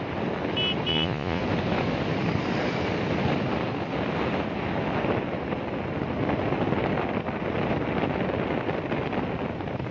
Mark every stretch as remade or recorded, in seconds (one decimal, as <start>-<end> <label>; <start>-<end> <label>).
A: 0.0-0.9 recorded; 0.9-1.4 remade; 1.4-9.9 recorded